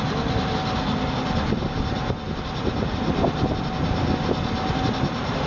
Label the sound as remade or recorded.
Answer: recorded